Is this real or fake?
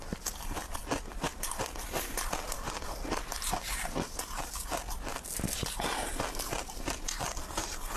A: real